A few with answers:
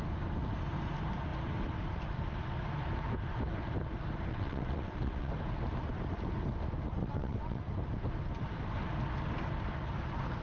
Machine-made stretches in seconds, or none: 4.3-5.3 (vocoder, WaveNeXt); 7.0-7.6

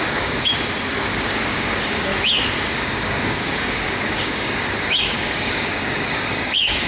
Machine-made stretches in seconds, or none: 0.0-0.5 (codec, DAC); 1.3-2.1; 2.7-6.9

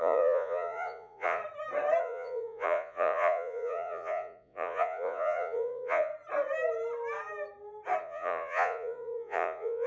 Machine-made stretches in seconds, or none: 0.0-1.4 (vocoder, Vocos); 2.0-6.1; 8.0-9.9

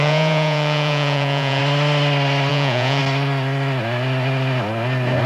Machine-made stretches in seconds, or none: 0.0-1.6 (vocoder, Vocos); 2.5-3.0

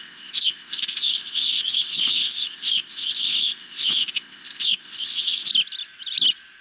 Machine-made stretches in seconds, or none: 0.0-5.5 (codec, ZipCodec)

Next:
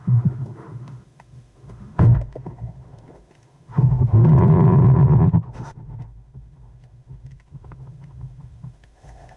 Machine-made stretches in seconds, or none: 0.0-4.3 (autoencoder, DAC-VAE); 5.3-9.4

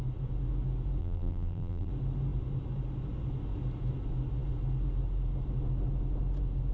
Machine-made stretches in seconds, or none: 1.0-1.9 (vocoder, BigVGAN v2)

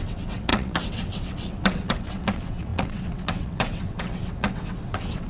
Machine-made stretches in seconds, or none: 0.0-5.3 (vocoder, WaveNeXt)